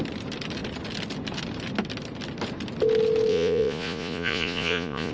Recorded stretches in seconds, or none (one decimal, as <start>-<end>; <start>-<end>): 0.0-3.3